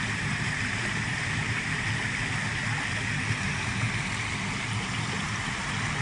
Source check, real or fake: real